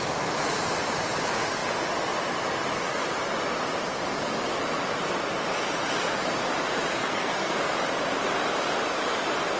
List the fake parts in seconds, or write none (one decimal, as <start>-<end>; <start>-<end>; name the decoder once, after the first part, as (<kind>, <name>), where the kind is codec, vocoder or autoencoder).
6.9-7.7 (codec, SNAC)